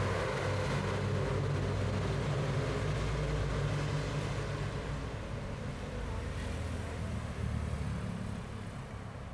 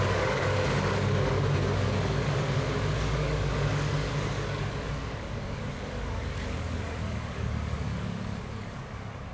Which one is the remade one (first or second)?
second